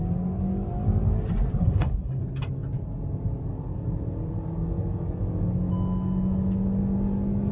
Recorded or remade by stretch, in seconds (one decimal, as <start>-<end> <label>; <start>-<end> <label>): 0.0-1.6 recorded; 1.6-2.2 remade; 2.2-7.5 recorded